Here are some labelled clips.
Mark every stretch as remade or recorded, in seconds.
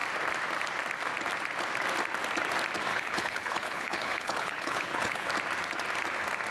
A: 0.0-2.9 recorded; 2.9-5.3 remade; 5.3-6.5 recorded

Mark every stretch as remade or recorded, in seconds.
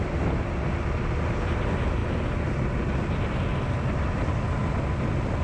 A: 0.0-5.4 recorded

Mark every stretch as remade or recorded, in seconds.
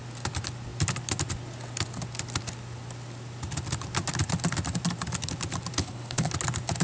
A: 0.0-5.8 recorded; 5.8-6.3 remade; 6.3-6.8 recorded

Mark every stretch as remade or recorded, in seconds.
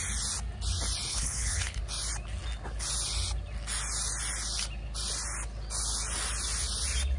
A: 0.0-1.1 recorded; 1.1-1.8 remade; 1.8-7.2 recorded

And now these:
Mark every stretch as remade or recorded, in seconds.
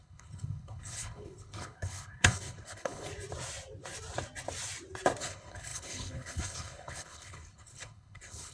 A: 0.0-3.1 remade; 3.1-5.2 recorded; 5.2-8.5 remade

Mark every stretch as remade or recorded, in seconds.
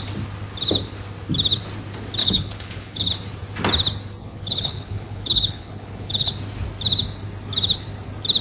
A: 0.0-2.2 recorded; 2.2-3.1 remade; 3.1-4.2 recorded; 4.2-6.3 remade; 6.3-8.4 recorded